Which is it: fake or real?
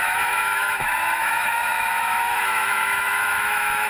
fake